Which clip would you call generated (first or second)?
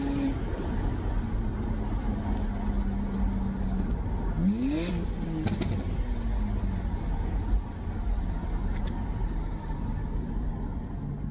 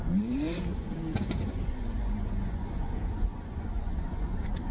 second